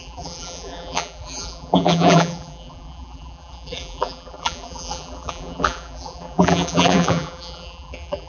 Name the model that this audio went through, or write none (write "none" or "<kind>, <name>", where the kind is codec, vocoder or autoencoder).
vocoder, BigVGAN v2